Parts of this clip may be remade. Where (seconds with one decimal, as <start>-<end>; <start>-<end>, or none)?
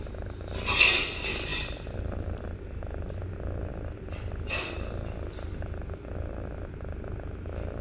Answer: none